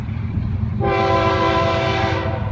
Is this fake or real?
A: fake